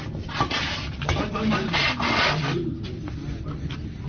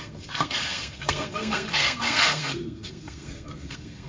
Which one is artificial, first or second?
second